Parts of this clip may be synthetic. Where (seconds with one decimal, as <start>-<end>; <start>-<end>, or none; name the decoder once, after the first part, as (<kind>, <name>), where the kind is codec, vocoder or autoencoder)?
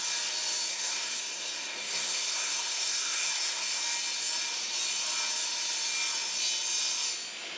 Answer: 0.7-3.8 (codec, SNAC)